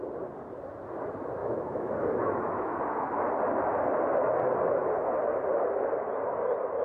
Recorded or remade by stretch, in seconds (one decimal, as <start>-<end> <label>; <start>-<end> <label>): 0.0-1.4 recorded; 1.4-2.8 remade; 2.8-6.8 recorded